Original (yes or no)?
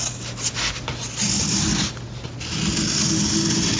yes